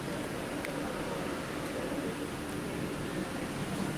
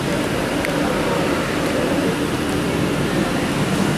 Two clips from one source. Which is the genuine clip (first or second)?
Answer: first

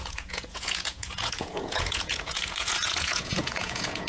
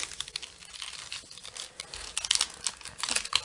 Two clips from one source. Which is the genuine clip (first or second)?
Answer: second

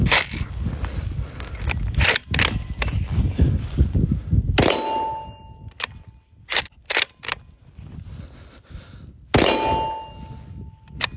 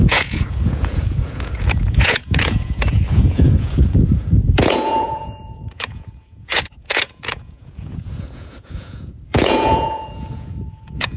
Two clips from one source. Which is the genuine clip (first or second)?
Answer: first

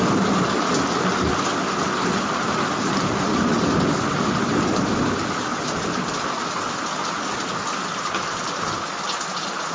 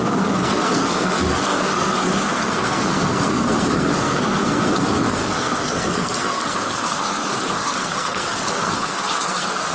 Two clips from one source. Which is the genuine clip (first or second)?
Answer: first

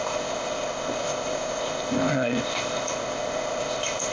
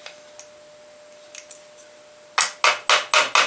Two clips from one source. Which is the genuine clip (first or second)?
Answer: second